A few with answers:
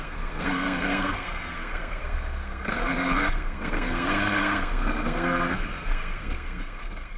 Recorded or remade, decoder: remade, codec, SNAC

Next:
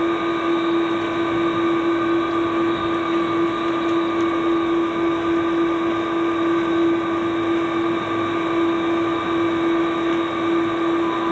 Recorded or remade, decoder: recorded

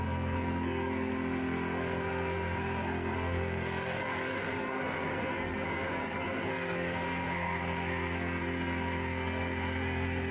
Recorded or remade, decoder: remade, codec, SNAC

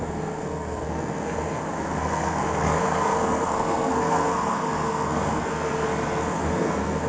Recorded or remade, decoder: remade, codec, SNAC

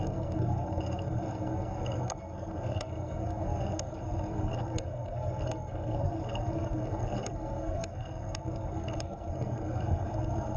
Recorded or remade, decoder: remade, codec, SNAC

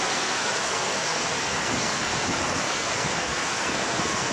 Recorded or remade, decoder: remade, codec, SNAC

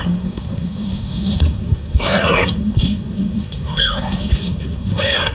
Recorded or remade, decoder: remade, codec, SNAC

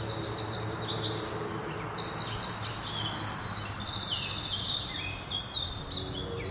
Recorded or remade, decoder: recorded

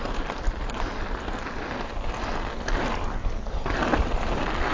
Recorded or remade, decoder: recorded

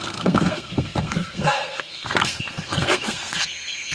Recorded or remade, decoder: remade, codec, SNAC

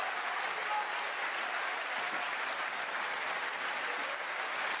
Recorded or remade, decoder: recorded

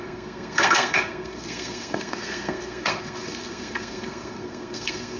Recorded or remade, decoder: remade, codec, SNAC